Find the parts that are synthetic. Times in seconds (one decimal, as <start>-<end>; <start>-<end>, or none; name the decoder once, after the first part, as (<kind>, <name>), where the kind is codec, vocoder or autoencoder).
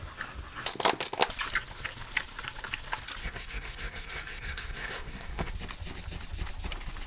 3.2-5.5 (codec, SNAC)